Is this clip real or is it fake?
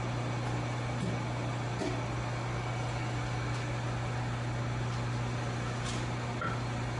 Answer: real